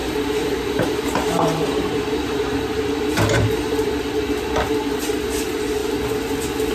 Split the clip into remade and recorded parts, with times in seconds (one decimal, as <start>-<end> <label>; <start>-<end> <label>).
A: 0.0-4.0 remade; 4.0-6.7 recorded